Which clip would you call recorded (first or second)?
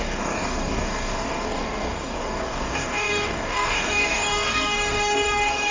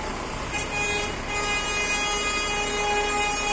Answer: second